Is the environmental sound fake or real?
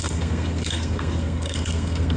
fake